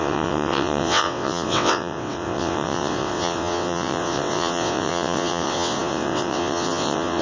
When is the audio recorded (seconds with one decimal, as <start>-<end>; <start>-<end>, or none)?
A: none